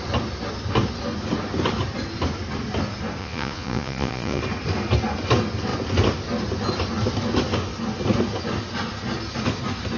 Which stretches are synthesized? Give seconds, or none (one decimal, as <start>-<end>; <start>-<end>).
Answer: 3.2-4.4